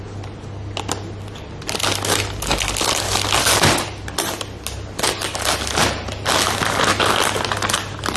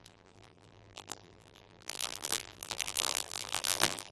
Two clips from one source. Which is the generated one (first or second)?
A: second